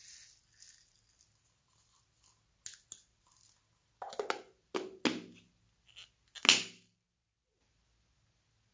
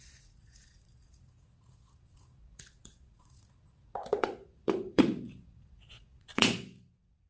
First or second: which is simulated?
second